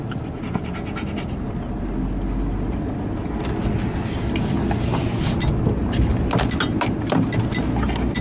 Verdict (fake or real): real